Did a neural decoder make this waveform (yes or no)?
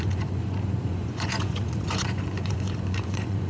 yes